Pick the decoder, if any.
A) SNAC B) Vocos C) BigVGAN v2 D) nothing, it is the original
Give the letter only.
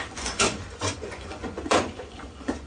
B